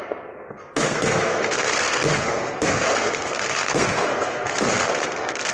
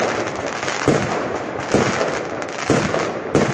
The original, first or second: second